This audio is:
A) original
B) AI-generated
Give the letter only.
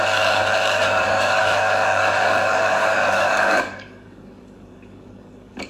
B